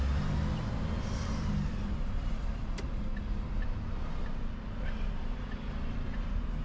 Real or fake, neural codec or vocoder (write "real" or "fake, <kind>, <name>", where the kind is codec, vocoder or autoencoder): real